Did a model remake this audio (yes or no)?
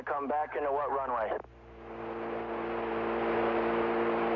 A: no